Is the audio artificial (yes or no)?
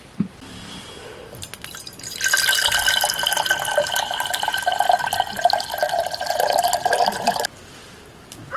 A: no